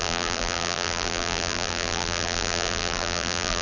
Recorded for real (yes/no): no